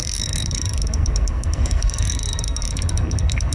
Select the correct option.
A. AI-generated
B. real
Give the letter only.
A